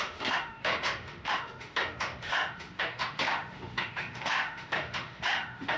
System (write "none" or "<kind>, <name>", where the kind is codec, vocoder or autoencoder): autoencoder, DAC-VAE